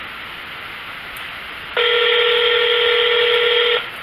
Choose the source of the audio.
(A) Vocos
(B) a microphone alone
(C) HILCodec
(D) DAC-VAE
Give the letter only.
B